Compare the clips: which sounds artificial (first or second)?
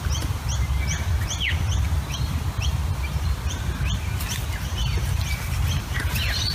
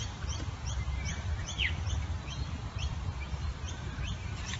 second